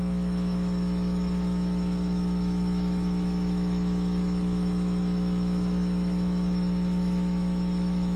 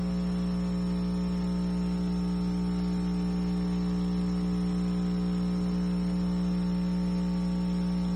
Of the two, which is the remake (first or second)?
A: first